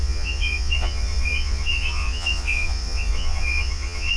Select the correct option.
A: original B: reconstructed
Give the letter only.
B